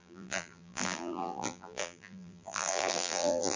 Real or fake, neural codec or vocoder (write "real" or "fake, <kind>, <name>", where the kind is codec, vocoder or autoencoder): fake, vocoder, BigVGAN v2